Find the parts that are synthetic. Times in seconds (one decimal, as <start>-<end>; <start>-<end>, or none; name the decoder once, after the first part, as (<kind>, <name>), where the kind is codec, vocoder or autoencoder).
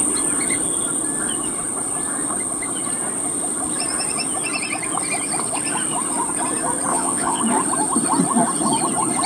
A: 6.9-7.4 (vocoder, Vocos)